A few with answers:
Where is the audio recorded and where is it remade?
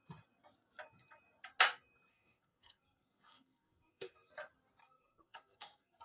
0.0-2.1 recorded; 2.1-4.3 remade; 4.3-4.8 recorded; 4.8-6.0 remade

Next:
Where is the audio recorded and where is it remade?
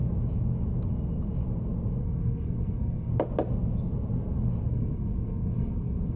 0.0-2.0 recorded; 2.0-3.1 remade; 3.1-4.7 recorded; 4.7-6.2 remade